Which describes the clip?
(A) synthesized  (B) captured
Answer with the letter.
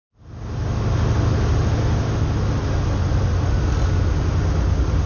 B